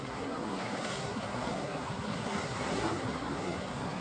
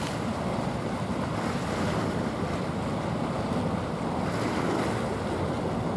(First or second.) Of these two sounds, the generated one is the first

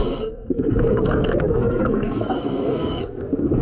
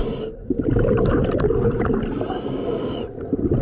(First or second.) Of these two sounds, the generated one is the first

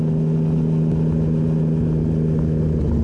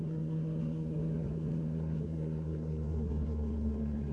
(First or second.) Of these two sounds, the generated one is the second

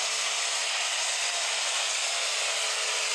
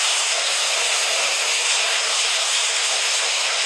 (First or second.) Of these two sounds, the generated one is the second